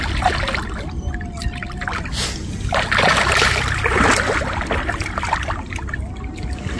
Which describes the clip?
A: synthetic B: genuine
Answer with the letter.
B